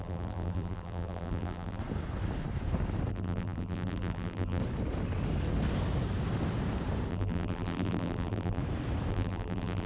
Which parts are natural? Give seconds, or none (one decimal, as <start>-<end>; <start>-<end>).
1.8-3.1; 4.6-7.1; 8.6-9.1